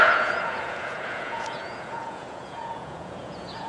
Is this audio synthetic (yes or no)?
yes